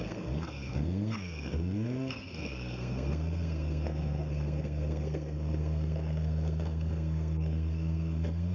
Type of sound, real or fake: fake